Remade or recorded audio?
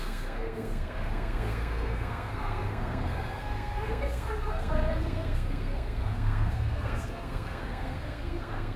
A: remade